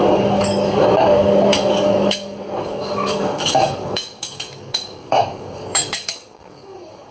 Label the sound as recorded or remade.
remade